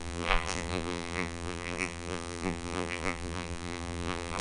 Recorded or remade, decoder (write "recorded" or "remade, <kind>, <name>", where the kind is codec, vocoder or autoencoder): remade, vocoder, BigVGAN v2